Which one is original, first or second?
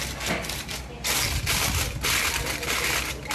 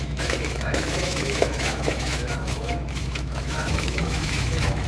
first